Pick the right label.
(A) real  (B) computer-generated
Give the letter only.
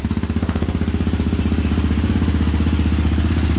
A